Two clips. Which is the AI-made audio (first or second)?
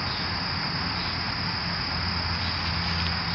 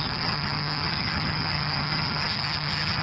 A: second